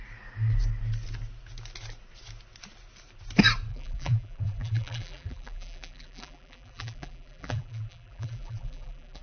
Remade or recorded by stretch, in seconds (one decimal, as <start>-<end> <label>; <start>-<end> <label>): 0.0-3.7 recorded; 3.7-9.2 remade